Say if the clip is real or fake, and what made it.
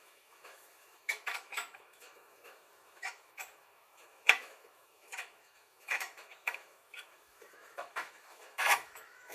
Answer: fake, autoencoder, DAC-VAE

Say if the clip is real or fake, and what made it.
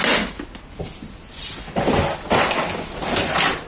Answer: real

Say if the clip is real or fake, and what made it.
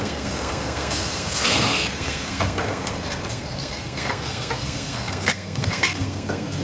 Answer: fake, codec, SNAC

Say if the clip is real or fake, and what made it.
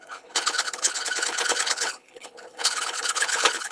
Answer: fake, codec, HILCodec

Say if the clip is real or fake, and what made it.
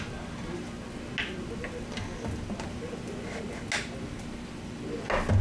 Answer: real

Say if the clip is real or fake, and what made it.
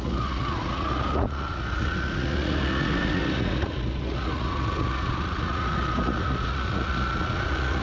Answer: fake, vocoder, Vocos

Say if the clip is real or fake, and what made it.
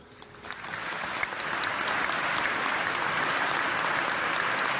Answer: real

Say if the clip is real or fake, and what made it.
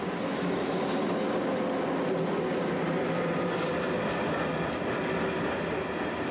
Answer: real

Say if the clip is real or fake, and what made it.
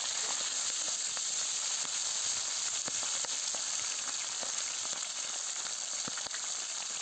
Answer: real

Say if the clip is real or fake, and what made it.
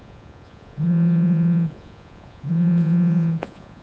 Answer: fake, vocoder, Vocos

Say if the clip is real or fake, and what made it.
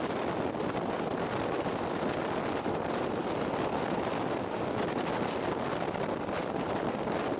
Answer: real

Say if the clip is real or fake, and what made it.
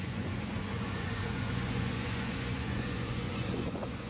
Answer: fake, vocoder, Vocos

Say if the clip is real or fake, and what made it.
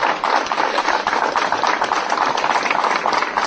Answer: real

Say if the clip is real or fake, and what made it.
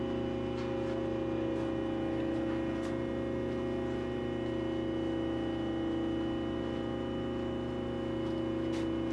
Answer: real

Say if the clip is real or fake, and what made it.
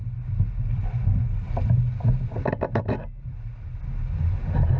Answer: real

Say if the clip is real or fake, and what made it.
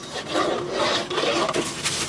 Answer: real